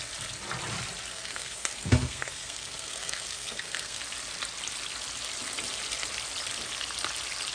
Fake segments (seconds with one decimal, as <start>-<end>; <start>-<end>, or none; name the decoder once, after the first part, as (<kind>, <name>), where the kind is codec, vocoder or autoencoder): 1.1-4.0 (codec, SNAC)